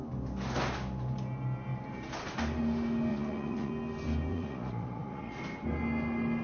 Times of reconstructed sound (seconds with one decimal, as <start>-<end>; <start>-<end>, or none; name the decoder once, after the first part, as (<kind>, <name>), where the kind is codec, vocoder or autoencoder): 3.1-3.7 (vocoder, Vocos); 4.3-5.4